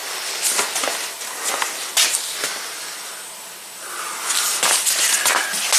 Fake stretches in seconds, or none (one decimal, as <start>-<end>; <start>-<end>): none